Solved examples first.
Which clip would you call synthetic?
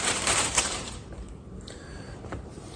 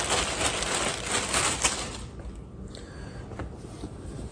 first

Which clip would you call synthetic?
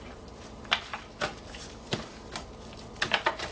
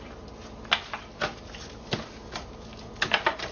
first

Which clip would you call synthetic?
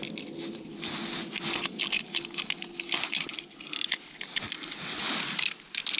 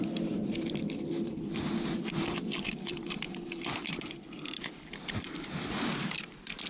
second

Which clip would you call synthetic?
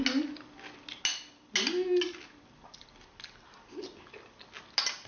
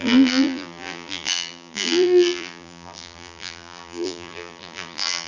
second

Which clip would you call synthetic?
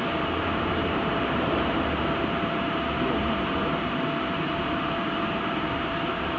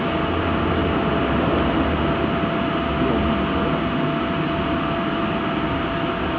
first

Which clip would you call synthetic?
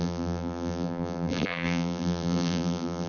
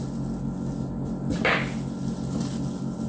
first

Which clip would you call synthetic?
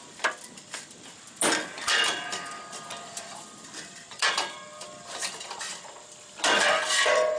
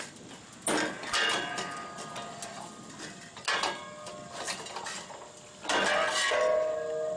first